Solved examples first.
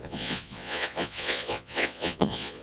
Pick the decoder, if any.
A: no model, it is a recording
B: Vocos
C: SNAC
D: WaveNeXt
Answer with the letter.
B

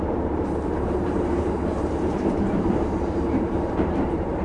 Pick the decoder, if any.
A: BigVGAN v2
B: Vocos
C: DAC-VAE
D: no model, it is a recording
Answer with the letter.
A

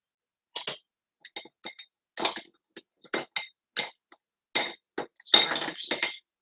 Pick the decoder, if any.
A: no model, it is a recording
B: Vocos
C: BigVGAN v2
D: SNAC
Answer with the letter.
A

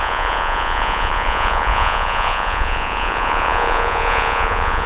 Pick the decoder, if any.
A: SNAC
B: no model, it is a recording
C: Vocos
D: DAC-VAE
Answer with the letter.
C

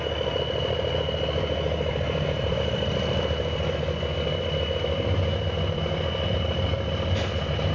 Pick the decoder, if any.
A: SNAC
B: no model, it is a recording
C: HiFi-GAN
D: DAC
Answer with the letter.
B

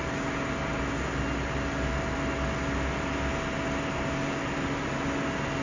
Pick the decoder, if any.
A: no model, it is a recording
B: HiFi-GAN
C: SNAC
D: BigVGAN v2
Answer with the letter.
A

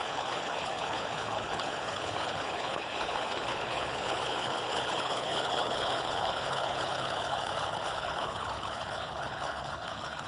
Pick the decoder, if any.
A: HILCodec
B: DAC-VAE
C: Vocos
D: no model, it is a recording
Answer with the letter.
A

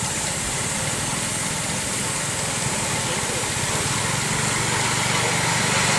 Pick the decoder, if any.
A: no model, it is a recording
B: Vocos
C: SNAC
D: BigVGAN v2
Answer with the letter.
A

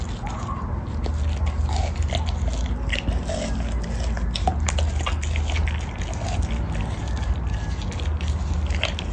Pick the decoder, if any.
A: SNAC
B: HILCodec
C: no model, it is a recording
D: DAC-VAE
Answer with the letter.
C